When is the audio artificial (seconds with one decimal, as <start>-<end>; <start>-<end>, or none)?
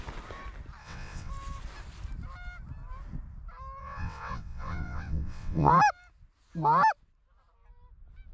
0.8-1.3; 3.8-5.7